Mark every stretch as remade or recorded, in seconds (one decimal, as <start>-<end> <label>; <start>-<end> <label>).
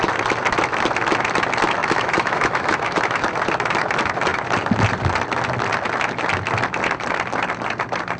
0.0-1.8 recorded; 1.8-3.3 remade; 3.3-8.2 recorded